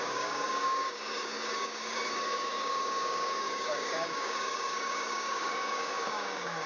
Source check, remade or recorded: remade